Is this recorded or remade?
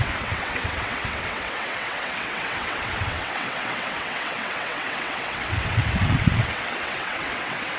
remade